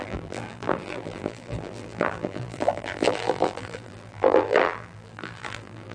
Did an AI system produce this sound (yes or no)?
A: yes